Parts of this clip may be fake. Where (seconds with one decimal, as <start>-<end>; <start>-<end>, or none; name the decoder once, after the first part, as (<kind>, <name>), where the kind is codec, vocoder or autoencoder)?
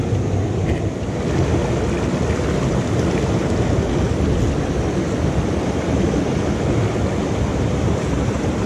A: 7.5-8.7 (vocoder, BigVGAN v2)